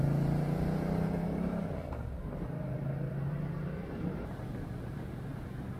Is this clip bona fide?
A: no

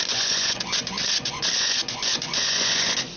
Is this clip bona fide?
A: no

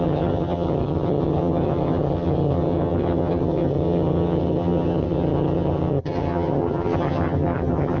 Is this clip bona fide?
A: no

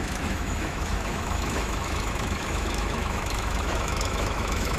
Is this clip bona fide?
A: no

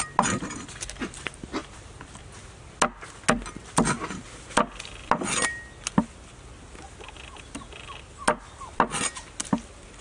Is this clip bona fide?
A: yes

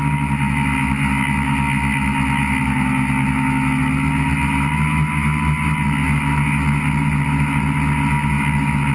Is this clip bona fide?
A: yes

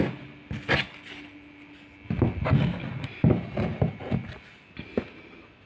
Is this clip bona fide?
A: yes